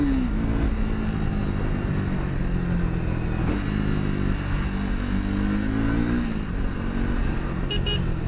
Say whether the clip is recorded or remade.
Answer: recorded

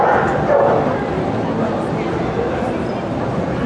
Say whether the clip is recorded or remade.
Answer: recorded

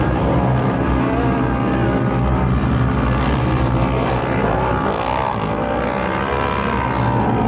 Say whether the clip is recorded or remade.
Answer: recorded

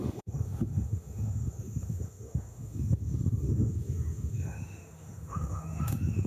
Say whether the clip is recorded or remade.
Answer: remade